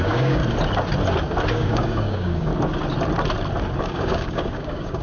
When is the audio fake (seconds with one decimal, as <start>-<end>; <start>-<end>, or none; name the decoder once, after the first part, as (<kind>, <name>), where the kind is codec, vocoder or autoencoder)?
0.0-0.4 (codec, DAC); 1.5-2.5; 3.8-5.0